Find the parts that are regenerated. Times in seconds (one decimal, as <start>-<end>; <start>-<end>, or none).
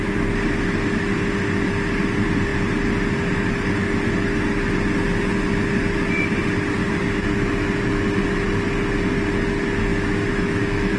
6.8-7.8; 9.9-11.0